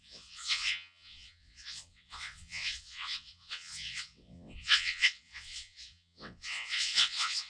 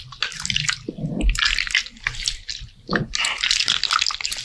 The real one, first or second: second